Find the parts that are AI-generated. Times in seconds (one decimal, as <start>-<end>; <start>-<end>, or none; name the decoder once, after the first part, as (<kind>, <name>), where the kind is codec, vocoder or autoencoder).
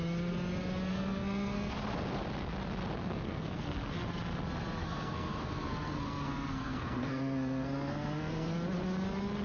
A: 0.9-1.7 (codec, SNAC); 3.0-3.9; 4.8-8.5